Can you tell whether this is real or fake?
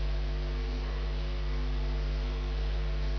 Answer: fake